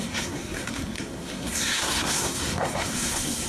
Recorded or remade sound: remade